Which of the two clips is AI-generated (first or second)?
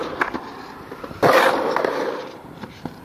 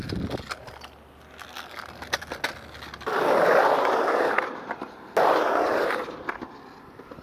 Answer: first